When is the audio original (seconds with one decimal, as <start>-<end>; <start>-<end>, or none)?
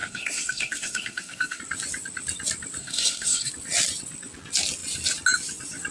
1.6-2.8; 3.5-5.9